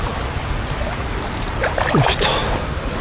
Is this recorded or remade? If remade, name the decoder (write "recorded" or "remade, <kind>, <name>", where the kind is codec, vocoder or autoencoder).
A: recorded